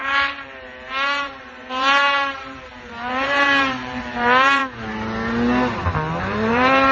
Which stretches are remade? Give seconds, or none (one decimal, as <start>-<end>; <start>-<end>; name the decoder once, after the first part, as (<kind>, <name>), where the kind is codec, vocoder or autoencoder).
0.0-4.6 (vocoder, BigVGAN v2); 6.2-6.9